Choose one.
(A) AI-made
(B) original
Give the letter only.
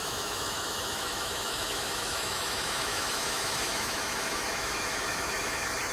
A